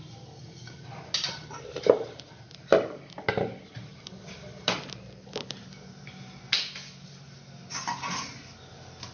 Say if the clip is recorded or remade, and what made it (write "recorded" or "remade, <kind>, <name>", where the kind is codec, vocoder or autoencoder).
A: recorded